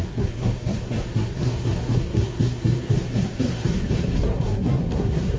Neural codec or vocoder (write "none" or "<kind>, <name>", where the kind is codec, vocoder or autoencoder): codec, SNAC